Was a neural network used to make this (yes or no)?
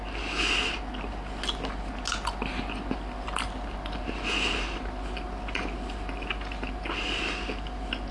no